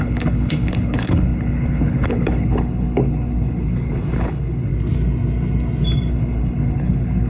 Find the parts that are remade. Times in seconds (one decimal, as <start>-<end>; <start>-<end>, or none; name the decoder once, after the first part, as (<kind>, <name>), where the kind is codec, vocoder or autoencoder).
0.0-4.7 (codec, HILCodec); 6.1-7.3